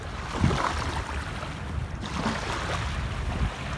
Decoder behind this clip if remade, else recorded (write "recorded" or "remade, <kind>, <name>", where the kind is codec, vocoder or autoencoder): recorded